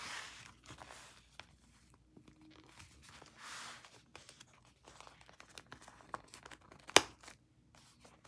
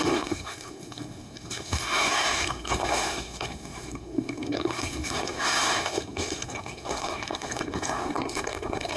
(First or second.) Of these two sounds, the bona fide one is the first